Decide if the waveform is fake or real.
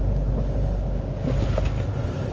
real